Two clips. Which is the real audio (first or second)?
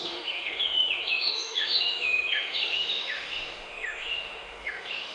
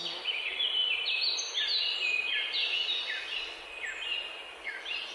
second